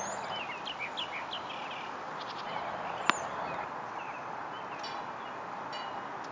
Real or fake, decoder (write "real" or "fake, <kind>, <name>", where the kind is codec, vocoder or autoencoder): real